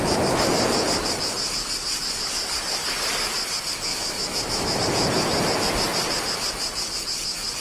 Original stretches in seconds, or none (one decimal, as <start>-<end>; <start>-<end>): 0.0-3.9; 4.8-7.6